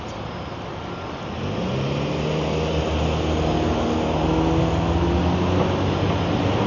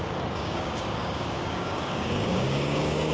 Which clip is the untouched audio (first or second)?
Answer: first